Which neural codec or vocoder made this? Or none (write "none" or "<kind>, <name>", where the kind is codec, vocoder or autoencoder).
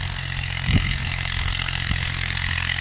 codec, SNAC